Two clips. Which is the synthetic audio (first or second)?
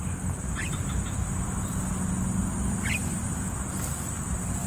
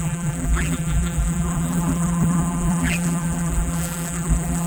second